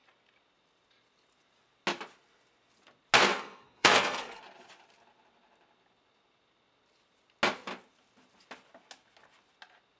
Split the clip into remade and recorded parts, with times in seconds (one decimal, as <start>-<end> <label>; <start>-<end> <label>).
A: 0.0-3.3 recorded; 3.3-4.4 remade; 4.4-10.0 recorded